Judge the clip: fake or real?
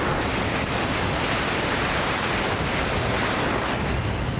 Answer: real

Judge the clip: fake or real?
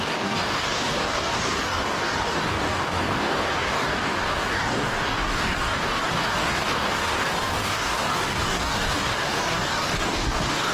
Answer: fake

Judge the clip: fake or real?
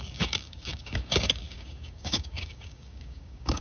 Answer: fake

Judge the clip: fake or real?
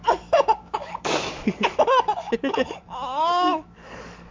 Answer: fake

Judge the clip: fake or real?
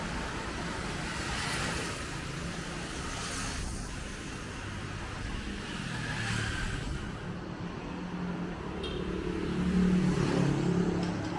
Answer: real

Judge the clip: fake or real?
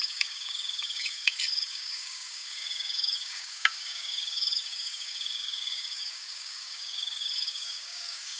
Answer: fake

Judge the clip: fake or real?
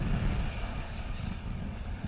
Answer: fake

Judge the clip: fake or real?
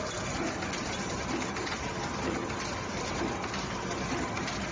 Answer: real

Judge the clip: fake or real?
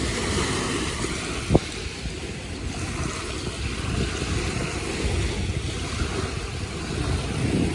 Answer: real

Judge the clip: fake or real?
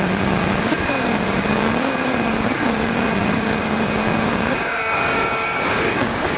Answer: fake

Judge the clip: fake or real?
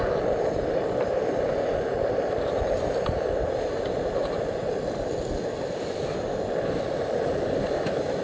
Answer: real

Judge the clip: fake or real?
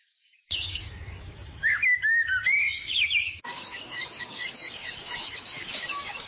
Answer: fake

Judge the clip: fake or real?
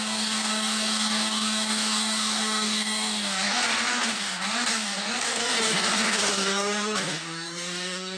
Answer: fake